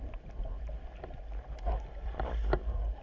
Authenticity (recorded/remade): recorded